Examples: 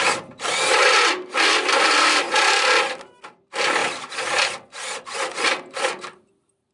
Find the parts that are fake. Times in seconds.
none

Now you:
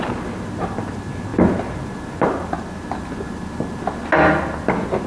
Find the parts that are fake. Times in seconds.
none

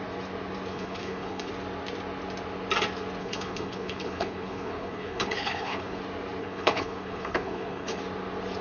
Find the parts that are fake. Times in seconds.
0.7-1.5 (codec, HILCodec); 3.2-6.0; 6.4-8.0

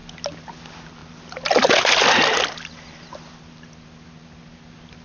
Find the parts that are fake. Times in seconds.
none

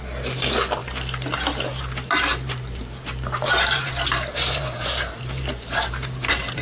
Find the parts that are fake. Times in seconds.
2.3-6.6 (vocoder, BigVGAN v2)

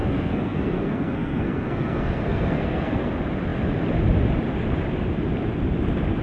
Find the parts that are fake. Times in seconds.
0.0-3.1 (codec, SNAC)